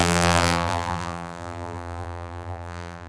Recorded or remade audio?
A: remade